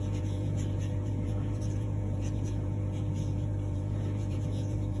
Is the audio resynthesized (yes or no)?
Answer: yes